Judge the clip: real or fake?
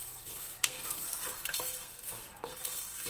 fake